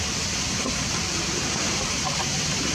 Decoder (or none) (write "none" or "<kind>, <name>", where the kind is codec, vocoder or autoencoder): none